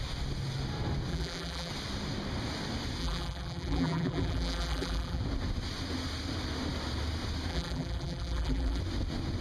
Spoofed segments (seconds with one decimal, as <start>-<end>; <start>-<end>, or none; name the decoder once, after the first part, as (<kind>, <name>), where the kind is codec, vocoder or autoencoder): 1.1-1.7 (vocoder, BigVGAN v2); 3.0-5.2; 7.5-8.8